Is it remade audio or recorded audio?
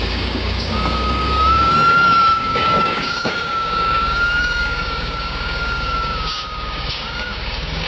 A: remade